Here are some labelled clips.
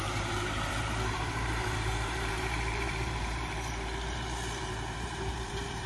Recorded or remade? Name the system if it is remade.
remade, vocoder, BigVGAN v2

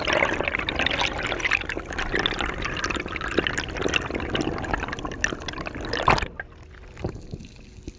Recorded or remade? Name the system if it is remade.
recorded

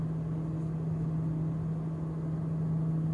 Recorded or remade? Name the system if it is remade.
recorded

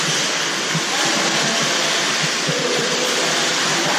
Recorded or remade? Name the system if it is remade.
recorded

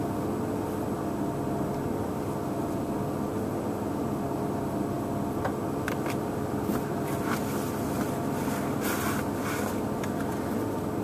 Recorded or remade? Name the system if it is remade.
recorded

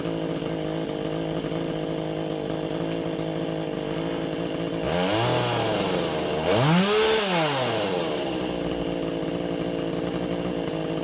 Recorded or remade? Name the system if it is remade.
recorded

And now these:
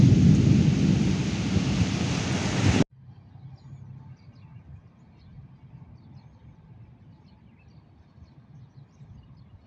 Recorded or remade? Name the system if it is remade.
recorded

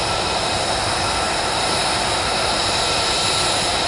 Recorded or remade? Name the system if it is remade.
recorded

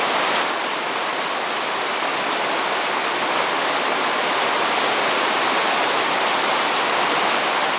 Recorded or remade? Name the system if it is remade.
recorded